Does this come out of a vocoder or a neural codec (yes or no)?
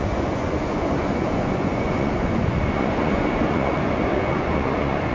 yes